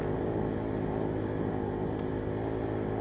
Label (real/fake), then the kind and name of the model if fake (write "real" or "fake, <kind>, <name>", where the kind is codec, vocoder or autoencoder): real